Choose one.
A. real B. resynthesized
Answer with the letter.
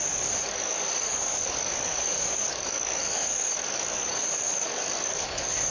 B